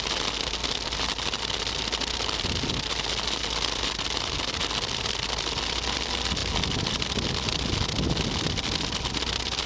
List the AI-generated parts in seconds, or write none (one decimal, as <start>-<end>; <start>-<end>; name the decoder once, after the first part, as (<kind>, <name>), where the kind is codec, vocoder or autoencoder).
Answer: none